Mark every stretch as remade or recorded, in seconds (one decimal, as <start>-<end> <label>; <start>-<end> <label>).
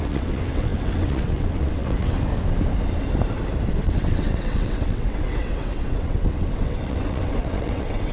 0.0-2.3 remade; 2.3-3.8 recorded; 3.8-8.1 remade